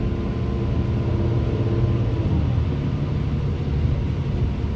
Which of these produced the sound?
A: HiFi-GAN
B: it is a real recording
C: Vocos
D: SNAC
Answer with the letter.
B